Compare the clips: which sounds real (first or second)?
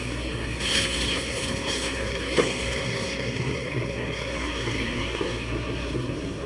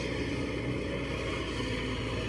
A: second